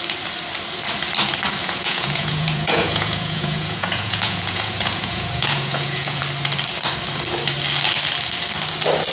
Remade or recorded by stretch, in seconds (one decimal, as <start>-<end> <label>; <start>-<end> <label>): 0.0-1.6 recorded; 1.6-6.2 remade; 6.2-9.1 recorded